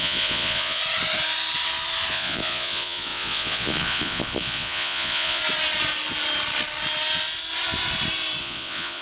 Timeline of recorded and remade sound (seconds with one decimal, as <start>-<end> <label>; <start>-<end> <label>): 0.0-0.8 remade; 0.8-2.1 recorded; 2.1-5.4 remade; 5.4-8.4 recorded; 8.4-9.0 remade